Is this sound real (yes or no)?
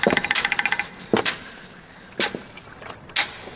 yes